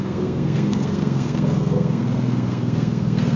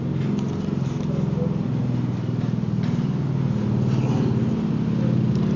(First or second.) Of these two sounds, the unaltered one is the second